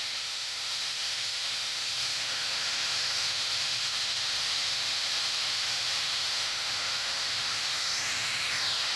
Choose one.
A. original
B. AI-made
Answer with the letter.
B